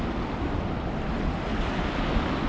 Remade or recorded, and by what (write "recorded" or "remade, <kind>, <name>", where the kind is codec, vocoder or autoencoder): recorded